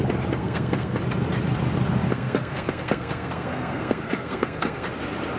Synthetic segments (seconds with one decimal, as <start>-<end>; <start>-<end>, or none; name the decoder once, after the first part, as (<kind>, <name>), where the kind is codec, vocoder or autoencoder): 0.4-1.0 (codec, SNAC); 2.1-4.9